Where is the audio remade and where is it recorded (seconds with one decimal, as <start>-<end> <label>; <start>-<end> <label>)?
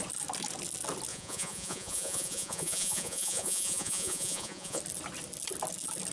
0.0-1.1 recorded; 1.1-4.8 remade; 4.8-6.1 recorded